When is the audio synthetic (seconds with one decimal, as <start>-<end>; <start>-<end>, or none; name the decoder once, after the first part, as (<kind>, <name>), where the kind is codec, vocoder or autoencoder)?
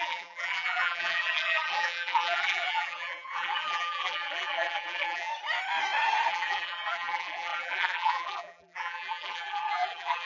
0.0-5.3 (vocoder, BigVGAN v2); 6.3-10.3